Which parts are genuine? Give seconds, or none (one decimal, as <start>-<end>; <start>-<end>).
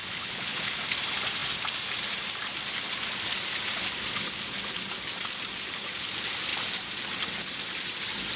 0.7-8.4